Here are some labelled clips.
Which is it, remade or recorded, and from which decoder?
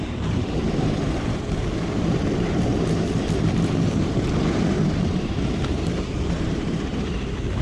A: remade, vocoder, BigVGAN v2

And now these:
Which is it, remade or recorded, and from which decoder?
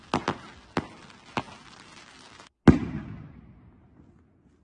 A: recorded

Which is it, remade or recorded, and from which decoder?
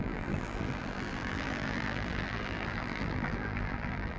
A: remade, vocoder, BigVGAN v2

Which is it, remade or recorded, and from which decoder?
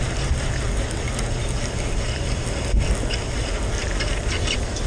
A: recorded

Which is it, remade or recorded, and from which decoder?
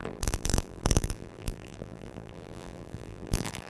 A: remade, vocoder, BigVGAN v2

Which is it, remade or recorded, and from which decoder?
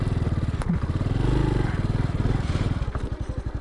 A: recorded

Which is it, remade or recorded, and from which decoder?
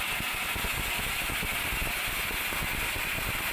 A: recorded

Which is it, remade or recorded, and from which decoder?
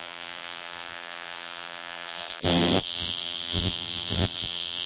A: remade, vocoder, BigVGAN v2